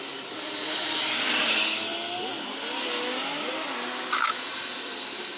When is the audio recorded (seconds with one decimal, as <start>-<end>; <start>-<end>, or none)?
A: 0.0-5.4